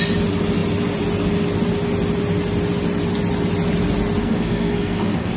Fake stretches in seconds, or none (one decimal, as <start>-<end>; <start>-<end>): 4.2-5.4